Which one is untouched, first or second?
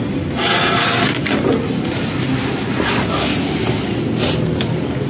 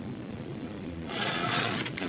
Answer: first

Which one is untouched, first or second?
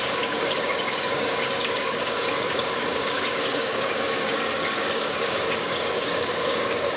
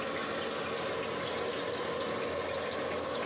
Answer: second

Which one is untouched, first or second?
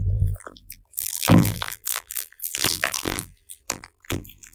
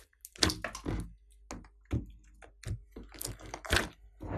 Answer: second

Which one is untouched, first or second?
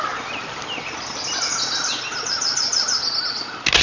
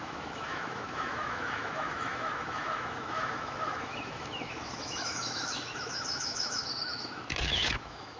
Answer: first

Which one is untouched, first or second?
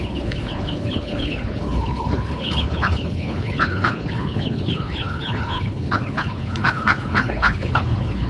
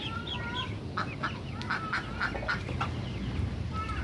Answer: second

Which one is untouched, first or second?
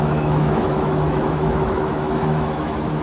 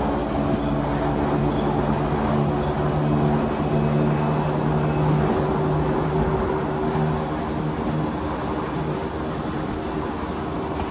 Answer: second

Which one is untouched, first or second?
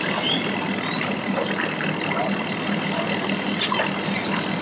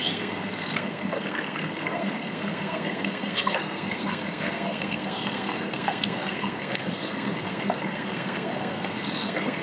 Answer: first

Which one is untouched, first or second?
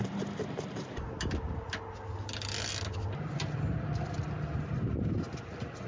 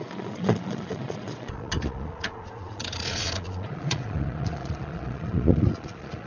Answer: first